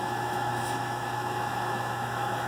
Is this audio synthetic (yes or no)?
yes